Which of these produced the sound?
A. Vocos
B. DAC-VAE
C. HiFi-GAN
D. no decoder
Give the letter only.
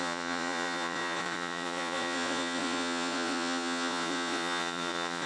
A